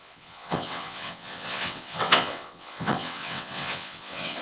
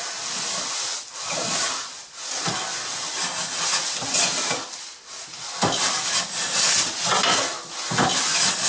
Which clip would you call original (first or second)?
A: second